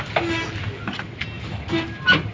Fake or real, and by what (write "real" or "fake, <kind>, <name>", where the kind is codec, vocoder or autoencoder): real